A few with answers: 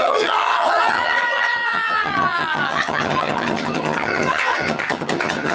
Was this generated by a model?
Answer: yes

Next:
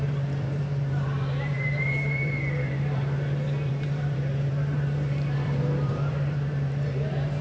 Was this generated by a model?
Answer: yes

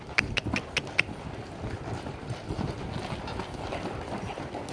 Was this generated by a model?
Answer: no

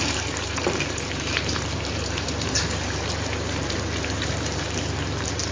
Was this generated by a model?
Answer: yes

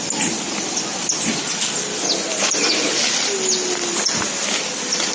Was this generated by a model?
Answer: no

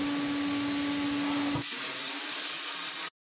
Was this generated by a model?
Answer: no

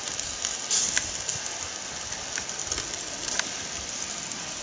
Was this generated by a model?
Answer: no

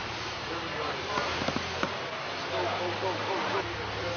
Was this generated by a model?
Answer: no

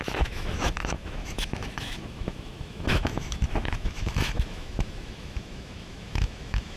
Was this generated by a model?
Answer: yes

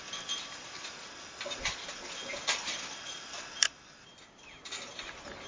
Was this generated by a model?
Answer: no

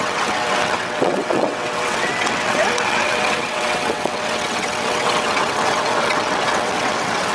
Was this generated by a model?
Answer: yes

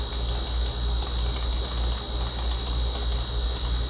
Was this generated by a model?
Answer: no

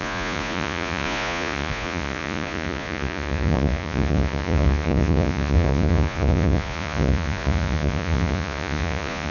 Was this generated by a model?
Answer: yes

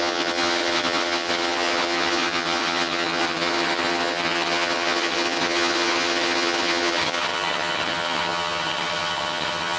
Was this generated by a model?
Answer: yes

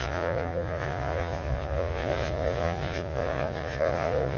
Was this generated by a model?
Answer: yes